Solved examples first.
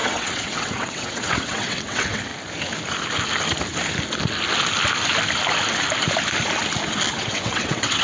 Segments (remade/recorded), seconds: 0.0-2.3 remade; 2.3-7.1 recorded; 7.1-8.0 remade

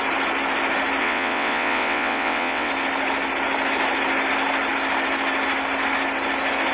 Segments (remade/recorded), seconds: 0.0-1.0 recorded; 1.0-2.7 remade; 2.7-6.7 recorded

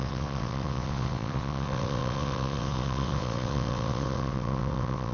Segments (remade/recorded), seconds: 0.0-5.1 remade

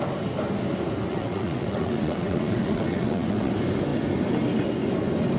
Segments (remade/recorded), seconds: 0.0-1.1 recorded; 1.1-3.5 remade; 3.5-5.4 recorded

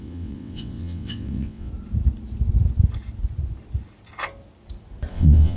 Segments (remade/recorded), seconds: 0.0-1.7 remade; 1.7-5.1 recorded; 5.1-5.6 remade